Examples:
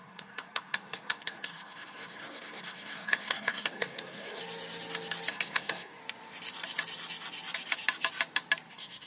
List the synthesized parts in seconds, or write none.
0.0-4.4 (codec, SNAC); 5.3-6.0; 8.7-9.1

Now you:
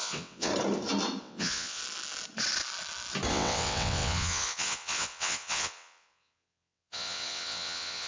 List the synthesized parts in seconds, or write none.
0.0-0.5 (vocoder, WaveNeXt); 1.2-1.8; 3.3-8.1

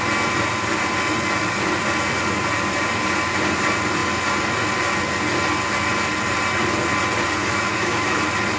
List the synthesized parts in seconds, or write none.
7.4-8.2 (autoencoder, DAC-VAE)

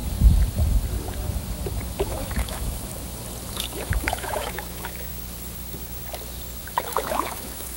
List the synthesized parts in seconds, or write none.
2.0-2.9 (autoencoder, DAC-VAE); 3.5-5.1; 6.6-7.8

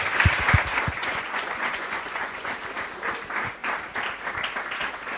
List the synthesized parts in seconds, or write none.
1.0-2.5 (vocoder, Vocos)